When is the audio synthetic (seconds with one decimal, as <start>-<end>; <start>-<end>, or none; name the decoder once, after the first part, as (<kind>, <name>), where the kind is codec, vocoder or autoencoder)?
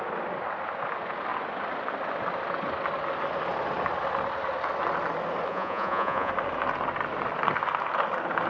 5.5-6.3 (vocoder, Vocos)